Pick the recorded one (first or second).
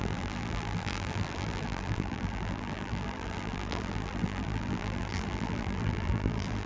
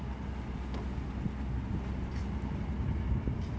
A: second